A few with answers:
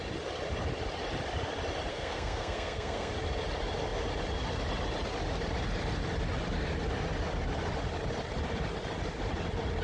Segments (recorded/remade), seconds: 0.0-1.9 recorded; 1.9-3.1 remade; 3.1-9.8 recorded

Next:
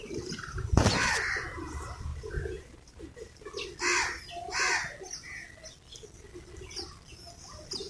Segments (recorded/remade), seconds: 0.0-2.1 recorded; 2.1-3.4 remade; 3.4-7.9 recorded

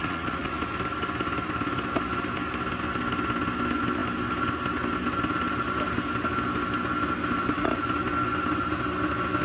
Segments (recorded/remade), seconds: 0.0-0.6 remade; 0.6-9.4 recorded